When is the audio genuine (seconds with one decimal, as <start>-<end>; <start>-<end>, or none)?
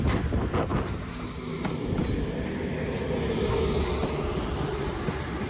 0.0-4.0; 4.7-5.5